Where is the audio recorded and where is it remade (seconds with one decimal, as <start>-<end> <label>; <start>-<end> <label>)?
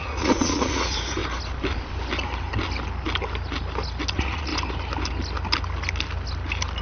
0.0-1.2 remade; 1.2-4.1 recorded; 4.1-4.5 remade; 4.5-6.8 recorded